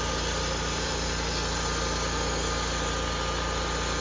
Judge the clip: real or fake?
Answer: real